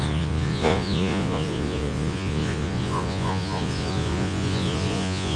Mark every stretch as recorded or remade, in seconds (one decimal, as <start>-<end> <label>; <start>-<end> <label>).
0.0-5.4 remade